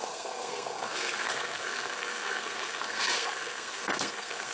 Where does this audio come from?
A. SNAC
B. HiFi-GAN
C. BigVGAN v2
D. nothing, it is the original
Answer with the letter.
A